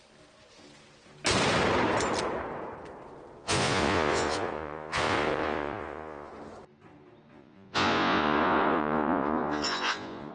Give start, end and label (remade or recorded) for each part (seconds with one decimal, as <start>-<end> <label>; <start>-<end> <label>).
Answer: 0.0-3.4 recorded; 3.4-6.3 remade; 6.3-7.3 recorded; 7.3-10.3 remade